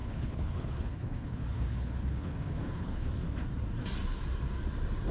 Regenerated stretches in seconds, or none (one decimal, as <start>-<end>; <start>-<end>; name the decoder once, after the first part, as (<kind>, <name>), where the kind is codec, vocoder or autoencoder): 0.0-3.1 (codec, HILCodec)